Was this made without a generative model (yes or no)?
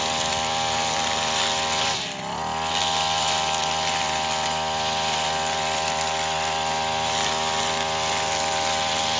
yes